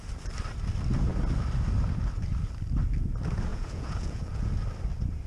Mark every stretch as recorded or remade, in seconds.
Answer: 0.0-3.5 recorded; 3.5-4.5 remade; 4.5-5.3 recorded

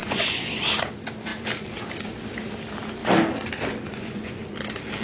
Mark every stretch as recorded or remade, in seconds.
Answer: 0.0-0.5 remade; 0.5-3.9 recorded; 3.9-4.4 remade; 4.4-5.0 recorded